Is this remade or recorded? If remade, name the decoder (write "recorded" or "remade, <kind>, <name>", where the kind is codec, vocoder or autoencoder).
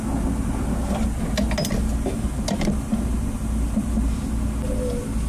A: recorded